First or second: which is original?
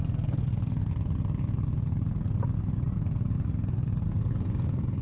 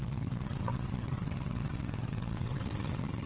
first